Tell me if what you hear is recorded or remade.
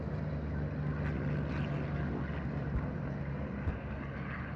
recorded